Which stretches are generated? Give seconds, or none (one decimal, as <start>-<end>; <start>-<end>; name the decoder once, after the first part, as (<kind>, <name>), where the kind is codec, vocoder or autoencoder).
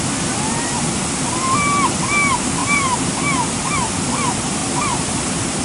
2.6-3.1 (vocoder, BigVGAN v2); 4.6-5.6